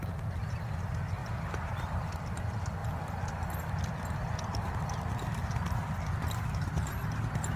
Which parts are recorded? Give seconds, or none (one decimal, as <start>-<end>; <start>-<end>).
0.0-1.2; 2.4-7.6